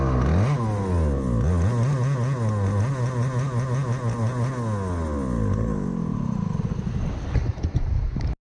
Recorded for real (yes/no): yes